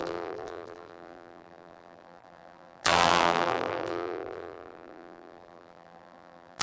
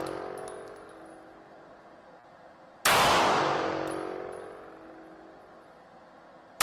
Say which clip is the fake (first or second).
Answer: first